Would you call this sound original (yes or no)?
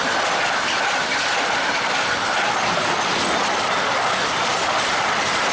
yes